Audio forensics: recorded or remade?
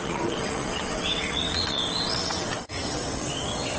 remade